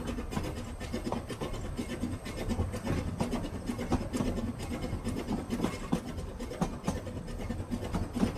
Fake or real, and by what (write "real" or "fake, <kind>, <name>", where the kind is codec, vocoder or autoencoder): real